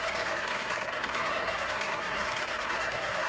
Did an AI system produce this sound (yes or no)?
yes